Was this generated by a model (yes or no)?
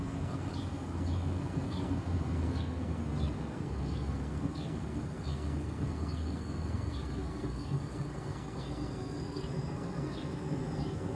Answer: yes